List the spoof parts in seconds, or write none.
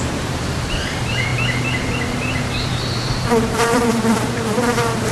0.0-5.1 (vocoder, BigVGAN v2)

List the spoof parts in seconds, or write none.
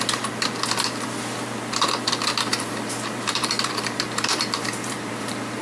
2.5-5.6 (vocoder, BigVGAN v2)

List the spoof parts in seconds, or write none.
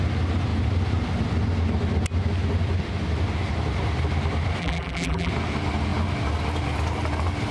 4.6-5.3 (vocoder, BigVGAN v2)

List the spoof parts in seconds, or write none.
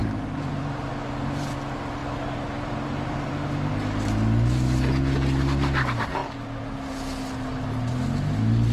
0.0-0.9 (vocoder, BigVGAN v2); 2.0-3.4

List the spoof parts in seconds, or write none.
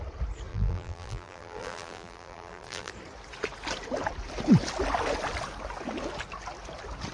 0.5-2.9 (vocoder, BigVGAN v2)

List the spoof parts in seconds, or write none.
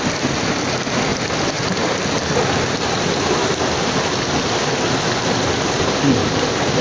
6.2-6.8 (vocoder, BigVGAN v2)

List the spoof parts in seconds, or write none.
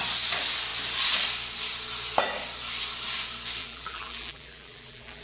3.6-5.2 (vocoder, BigVGAN v2)